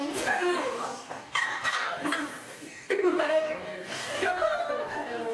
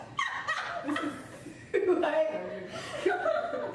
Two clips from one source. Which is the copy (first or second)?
first